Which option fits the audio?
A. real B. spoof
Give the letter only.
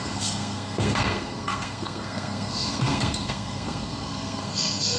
B